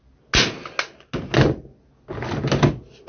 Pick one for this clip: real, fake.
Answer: real